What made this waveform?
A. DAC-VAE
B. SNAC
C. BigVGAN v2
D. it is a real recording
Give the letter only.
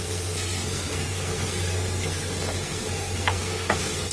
B